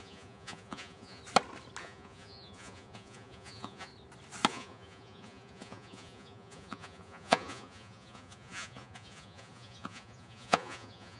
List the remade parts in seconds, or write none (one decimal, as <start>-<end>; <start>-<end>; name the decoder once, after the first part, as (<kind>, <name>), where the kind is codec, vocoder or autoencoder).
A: 0.0-1.2 (vocoder, Vocos); 1.8-3.9; 4.5-11.2